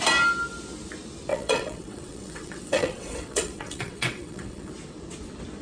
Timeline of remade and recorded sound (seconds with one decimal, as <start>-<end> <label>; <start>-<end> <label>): 0.0-1.3 recorded; 1.3-4.7 remade; 4.7-5.6 recorded